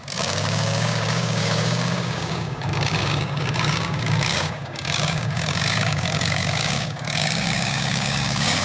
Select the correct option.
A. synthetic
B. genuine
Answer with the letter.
A